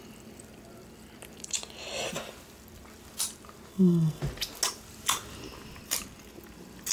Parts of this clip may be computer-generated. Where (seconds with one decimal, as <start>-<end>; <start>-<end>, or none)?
3.7-4.2